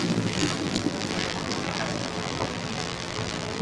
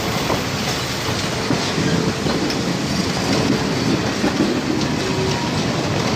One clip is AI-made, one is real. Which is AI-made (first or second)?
first